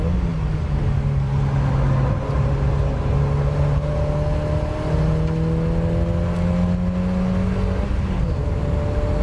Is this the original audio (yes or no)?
yes